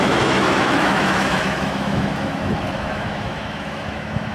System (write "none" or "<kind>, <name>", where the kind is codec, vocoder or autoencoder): autoencoder, DAC-VAE